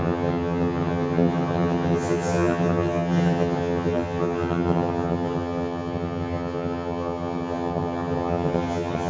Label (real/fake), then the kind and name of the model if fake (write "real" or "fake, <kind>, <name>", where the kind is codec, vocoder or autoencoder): fake, vocoder, HiFi-GAN